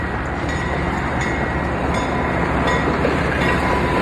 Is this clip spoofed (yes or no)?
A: yes